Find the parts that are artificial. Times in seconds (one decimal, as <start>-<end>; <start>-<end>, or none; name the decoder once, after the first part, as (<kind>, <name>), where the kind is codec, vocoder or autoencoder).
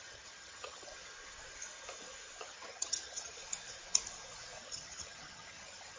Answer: 0.0-0.9 (vocoder, HiFi-GAN); 2.4-3.4; 4.6-6.0